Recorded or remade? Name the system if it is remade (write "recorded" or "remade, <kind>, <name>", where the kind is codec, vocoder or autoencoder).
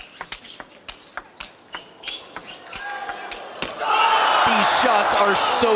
recorded